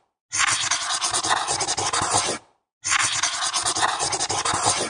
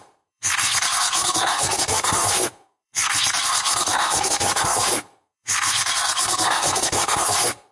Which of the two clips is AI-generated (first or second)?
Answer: second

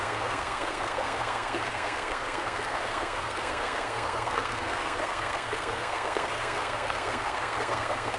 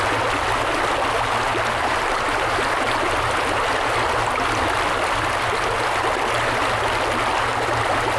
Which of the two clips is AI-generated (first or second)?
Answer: first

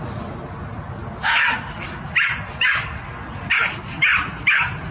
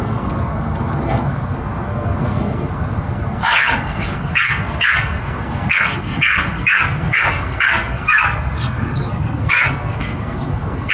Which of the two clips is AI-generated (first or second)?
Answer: second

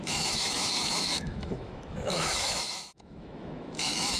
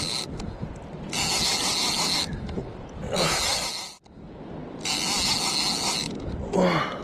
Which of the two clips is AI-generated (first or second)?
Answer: first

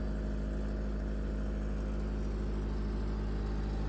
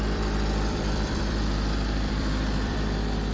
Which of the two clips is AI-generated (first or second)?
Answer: second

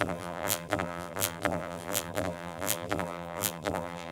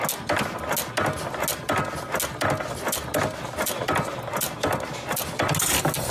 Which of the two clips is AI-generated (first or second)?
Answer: first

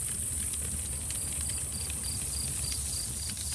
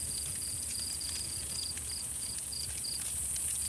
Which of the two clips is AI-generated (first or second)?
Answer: second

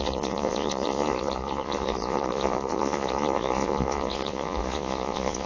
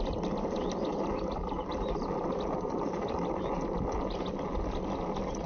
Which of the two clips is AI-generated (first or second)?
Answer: first